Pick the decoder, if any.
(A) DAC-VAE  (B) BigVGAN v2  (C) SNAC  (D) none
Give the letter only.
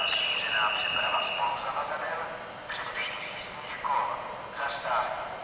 D